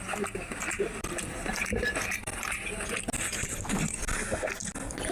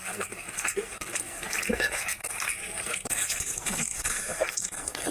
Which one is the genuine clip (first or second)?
first